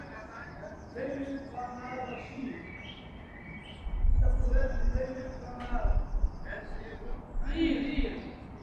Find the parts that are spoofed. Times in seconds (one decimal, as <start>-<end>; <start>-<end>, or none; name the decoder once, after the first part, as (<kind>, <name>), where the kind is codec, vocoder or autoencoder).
2.4-3.8 (vocoder, BigVGAN v2)

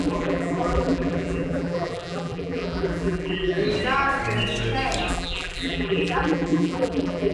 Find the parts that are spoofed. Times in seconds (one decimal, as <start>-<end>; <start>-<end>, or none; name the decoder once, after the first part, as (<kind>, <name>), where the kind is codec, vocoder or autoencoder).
0.0-3.6 (vocoder, BigVGAN v2); 5.1-7.3

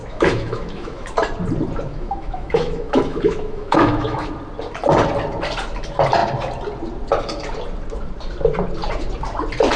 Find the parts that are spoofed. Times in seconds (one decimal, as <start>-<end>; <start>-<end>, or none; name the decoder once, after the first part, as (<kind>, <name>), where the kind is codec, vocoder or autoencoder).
0.0-1.1 (autoencoder, DAC-VAE); 1.9-4.3

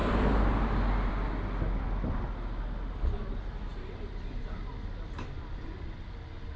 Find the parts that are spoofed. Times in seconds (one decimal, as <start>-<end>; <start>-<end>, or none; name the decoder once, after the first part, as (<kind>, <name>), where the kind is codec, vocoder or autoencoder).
none

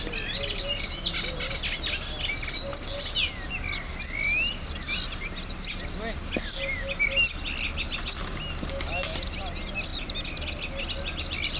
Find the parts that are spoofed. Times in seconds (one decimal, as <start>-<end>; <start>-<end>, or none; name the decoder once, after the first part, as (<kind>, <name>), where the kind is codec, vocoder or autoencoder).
none